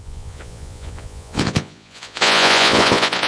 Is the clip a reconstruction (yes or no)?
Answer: yes